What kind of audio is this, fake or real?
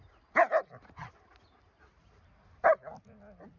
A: real